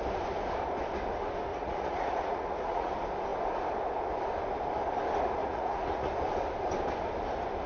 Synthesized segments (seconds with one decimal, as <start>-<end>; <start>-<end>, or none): 1.5-2.9; 5.4-6.1